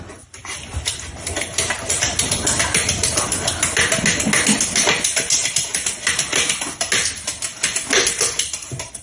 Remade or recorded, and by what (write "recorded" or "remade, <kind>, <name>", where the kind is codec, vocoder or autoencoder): recorded